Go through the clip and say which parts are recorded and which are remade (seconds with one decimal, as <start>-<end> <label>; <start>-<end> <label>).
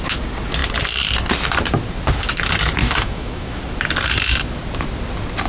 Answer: 0.0-2.8 recorded; 2.8-3.6 remade; 3.6-5.5 recorded